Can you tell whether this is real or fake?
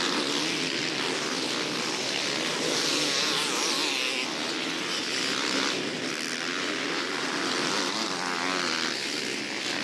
real